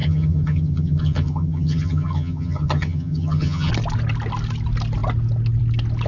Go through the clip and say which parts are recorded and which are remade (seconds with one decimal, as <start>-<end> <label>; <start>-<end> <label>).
0.0-3.7 remade; 3.7-6.1 recorded